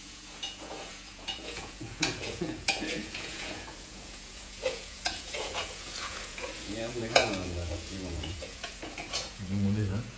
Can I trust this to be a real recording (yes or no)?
no